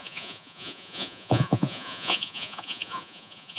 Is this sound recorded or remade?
remade